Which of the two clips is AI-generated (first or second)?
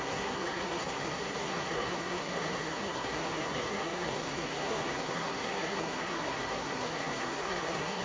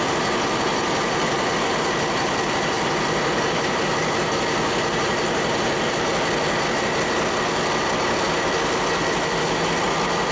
first